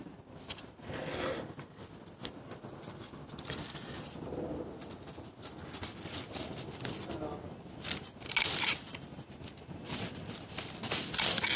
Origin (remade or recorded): recorded